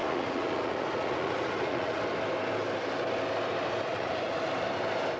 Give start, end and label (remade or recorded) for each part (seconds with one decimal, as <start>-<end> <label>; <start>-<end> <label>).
0.0-2.0 remade; 2.0-3.9 recorded; 3.9-4.4 remade; 4.4-5.2 recorded